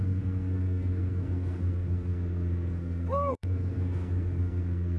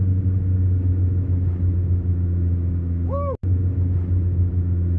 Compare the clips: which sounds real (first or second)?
second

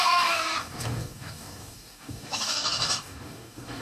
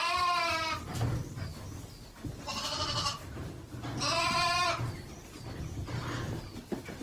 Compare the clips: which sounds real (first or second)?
second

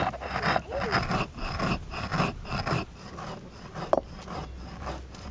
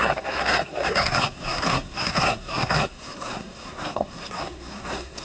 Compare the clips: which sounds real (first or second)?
first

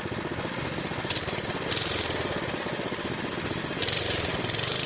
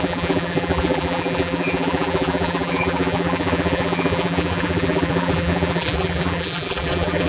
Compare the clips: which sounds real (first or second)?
first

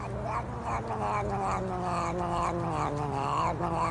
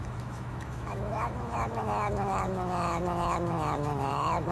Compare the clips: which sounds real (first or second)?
first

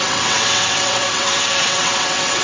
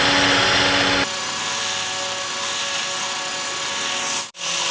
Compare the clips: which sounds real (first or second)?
second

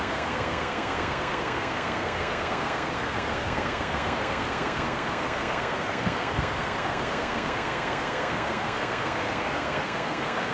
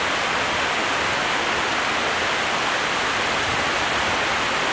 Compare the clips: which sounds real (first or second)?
second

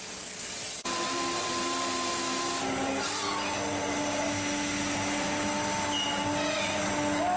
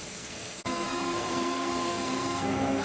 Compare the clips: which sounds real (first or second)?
first